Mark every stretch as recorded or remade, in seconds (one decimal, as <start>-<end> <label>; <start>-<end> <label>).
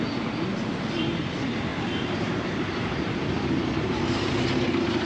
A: 0.0-1.7 recorded; 1.7-4.3 remade; 4.3-5.1 recorded